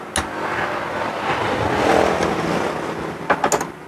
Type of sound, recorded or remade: recorded